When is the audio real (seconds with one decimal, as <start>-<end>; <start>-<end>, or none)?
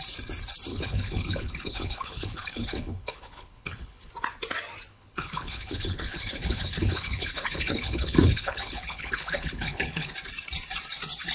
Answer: 0.0-0.7; 4.1-4.9; 10.1-11.3